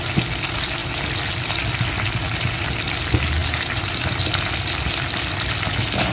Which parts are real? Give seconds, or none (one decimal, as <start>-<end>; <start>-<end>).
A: 0.0-0.8; 1.3-3.4; 4.2-6.1